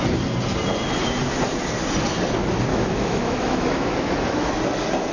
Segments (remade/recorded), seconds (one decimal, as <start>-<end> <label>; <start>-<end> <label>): 0.0-2.7 recorded; 2.7-4.5 remade; 4.5-5.1 recorded